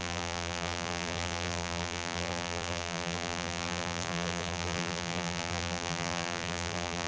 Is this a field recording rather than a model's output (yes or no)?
no